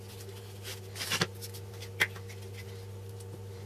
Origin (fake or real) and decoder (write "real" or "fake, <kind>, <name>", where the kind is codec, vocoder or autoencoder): real